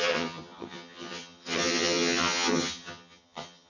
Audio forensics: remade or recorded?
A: remade